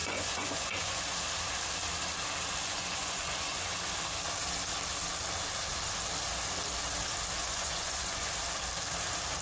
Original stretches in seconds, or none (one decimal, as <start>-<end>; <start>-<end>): 1.0-2.6; 3.7-7.4; 8.3-9.4